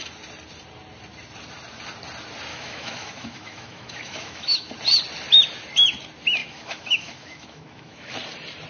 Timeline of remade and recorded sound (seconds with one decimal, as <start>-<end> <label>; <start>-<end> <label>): 0.0-2.5 recorded; 2.5-4.7 remade; 4.7-6.4 recorded; 6.4-8.1 remade; 8.1-8.7 recorded